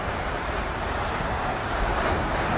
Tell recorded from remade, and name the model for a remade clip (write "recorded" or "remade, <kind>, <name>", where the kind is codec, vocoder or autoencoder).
recorded